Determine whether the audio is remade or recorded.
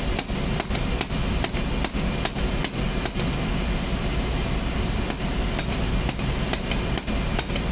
recorded